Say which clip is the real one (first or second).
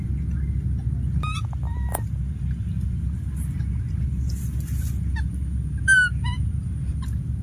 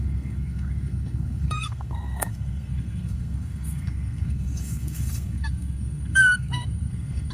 first